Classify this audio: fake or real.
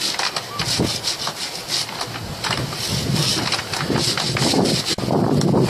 real